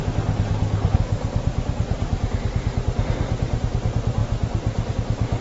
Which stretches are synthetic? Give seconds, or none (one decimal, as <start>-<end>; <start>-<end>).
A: none